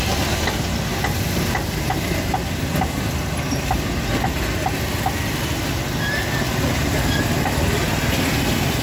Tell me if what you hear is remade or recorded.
recorded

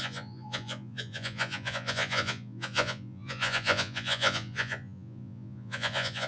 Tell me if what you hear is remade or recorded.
remade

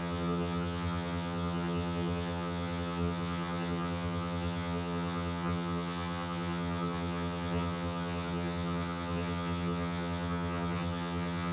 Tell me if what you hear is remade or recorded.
remade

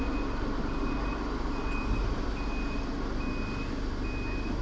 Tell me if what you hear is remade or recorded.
recorded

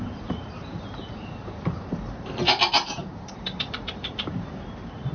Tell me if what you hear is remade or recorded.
remade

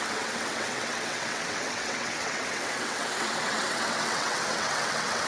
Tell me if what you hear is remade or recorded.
remade